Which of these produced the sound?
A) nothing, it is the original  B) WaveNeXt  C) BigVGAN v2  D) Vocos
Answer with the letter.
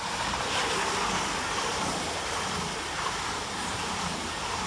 A